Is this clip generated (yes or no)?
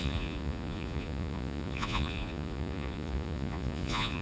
yes